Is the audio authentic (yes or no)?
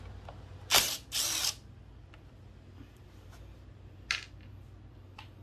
yes